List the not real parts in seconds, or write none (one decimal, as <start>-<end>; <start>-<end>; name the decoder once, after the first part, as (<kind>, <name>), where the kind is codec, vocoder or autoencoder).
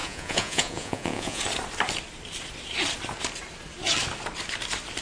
0.0-1.4 (vocoder, Vocos)